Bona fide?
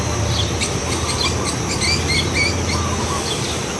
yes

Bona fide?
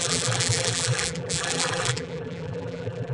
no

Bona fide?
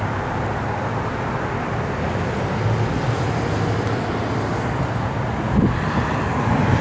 yes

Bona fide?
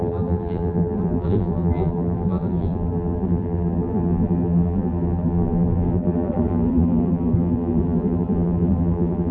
no